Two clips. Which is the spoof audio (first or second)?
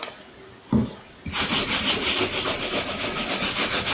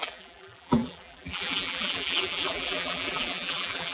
second